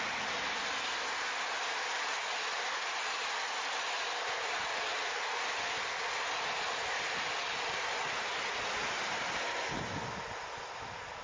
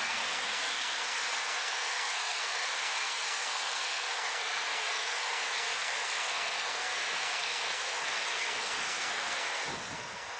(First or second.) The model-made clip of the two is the second